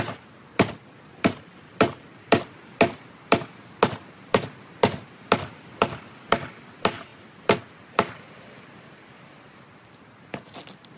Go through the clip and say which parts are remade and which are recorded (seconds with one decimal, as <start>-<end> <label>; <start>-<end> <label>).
0.0-11.0 recorded